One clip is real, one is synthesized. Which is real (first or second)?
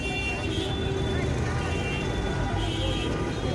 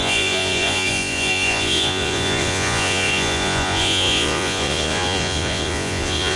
first